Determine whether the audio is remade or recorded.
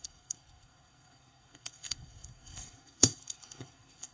remade